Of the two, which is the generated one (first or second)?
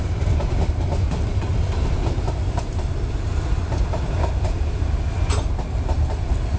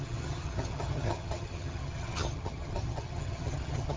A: second